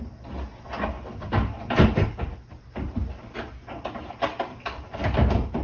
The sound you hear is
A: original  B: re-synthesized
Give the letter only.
A